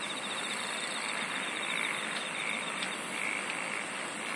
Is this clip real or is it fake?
real